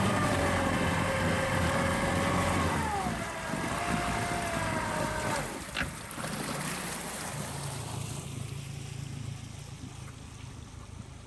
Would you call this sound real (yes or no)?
yes